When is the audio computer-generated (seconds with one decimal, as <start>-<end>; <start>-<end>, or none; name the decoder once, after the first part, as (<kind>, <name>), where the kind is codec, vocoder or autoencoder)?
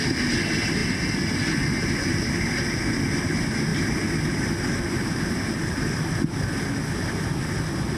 none